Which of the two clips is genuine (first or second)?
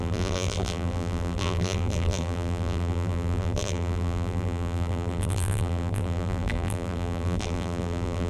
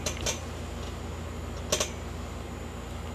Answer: second